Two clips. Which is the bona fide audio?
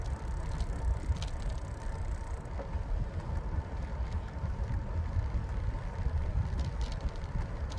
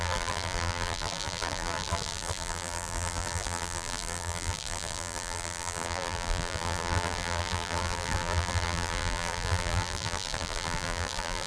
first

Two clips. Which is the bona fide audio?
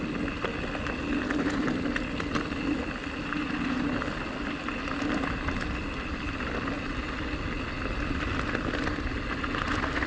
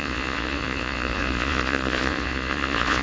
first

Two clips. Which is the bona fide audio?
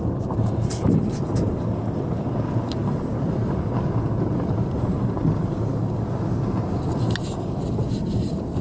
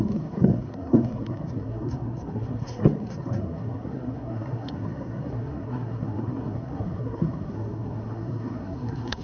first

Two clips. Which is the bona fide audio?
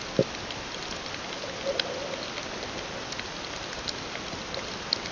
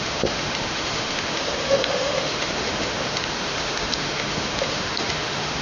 first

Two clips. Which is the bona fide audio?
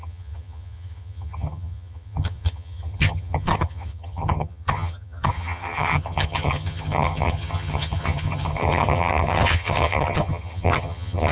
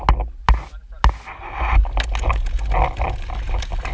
second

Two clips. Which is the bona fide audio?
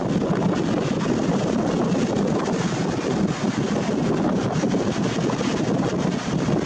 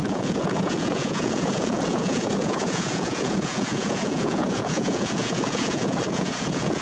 first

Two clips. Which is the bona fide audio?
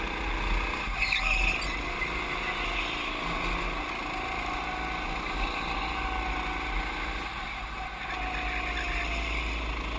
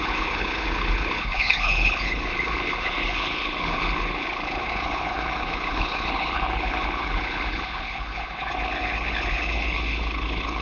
first